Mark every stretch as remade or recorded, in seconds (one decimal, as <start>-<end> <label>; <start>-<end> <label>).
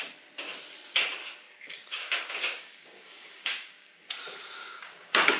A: 0.0-1.2 recorded; 1.2-4.1 remade; 4.1-4.6 recorded; 4.6-5.4 remade